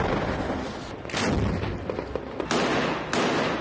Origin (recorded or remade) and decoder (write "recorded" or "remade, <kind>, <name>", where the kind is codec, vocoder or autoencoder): recorded